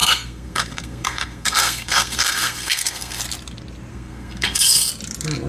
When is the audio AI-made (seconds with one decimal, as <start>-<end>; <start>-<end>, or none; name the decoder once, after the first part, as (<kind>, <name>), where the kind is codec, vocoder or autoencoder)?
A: 0.0-3.2 (codec, SNAC); 3.9-4.9